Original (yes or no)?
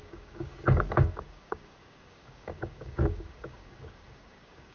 no